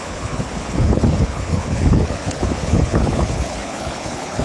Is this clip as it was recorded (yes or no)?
no